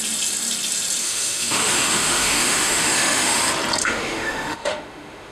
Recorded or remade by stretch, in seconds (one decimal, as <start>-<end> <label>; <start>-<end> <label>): 0.0-1.0 recorded; 1.0-3.4 remade; 3.4-3.8 recorded; 3.8-5.3 remade